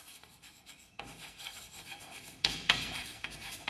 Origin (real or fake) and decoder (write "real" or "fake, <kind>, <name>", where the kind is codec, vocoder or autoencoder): fake, codec, SNAC